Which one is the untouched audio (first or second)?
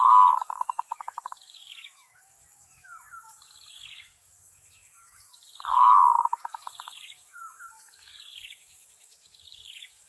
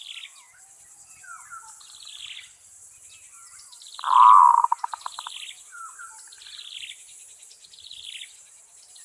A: second